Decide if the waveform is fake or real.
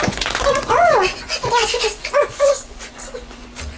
fake